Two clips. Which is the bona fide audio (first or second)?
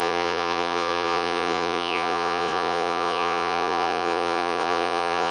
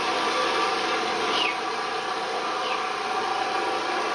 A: second